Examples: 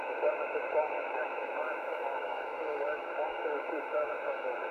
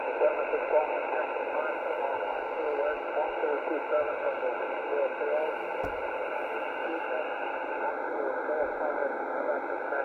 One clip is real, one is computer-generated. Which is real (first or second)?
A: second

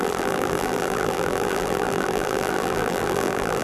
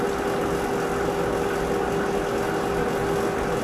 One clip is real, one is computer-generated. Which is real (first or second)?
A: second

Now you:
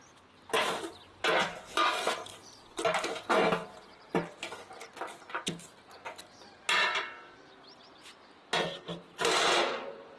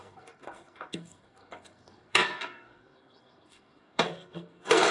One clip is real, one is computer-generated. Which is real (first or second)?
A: first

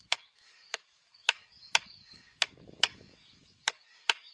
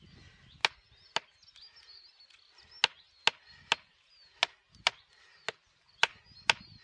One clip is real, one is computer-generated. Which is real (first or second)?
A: second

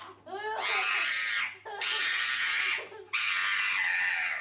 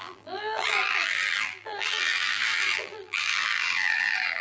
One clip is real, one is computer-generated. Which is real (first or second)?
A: first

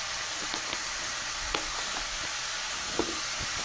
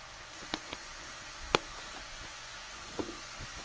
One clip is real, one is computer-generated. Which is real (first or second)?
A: first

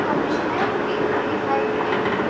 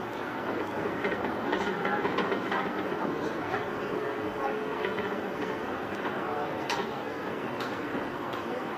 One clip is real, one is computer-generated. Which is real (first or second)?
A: first